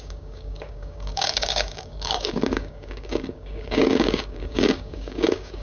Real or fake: fake